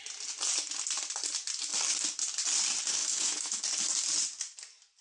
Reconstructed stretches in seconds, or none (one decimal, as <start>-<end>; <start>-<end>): 3.0-3.6